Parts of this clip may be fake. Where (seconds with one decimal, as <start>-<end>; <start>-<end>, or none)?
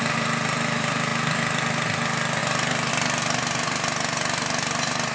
none